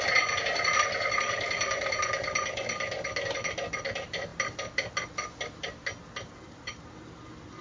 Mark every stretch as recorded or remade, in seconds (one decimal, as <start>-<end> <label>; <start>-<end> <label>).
0.0-7.6 recorded